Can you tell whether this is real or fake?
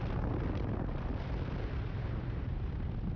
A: real